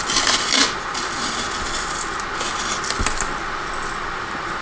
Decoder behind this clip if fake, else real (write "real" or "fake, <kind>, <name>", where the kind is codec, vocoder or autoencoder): real